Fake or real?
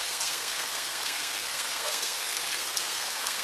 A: fake